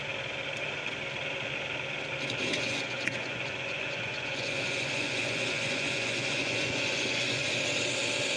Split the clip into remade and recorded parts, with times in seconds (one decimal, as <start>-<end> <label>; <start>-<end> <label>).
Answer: 0.0-2.5 recorded; 2.5-7.5 remade; 7.5-8.4 recorded

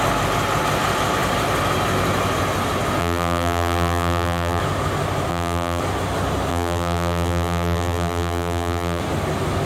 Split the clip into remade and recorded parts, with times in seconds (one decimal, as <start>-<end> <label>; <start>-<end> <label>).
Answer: 0.0-3.0 recorded; 3.0-4.6 remade; 4.6-5.3 recorded; 5.3-5.8 remade; 5.8-6.5 recorded; 6.5-9.0 remade; 9.0-9.7 recorded

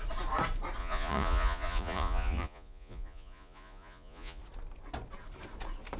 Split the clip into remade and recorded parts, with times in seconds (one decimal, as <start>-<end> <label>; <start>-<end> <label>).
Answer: 0.0-0.8 recorded; 0.8-4.4 remade; 4.4-6.0 recorded

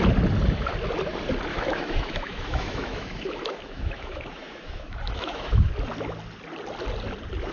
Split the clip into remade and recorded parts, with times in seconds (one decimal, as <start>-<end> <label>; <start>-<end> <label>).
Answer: 0.0-1.5 recorded; 1.5-5.6 remade; 5.6-7.5 recorded

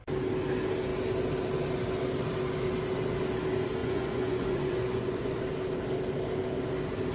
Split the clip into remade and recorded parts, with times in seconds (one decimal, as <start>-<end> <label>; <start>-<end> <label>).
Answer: 0.0-3.8 recorded; 3.8-5.4 remade; 5.4-7.1 recorded